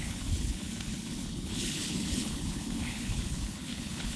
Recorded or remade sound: remade